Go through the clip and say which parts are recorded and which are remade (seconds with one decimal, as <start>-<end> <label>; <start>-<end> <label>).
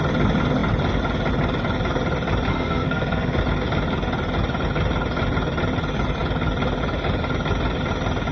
0.0-2.5 recorded; 2.5-3.4 remade; 3.4-8.3 recorded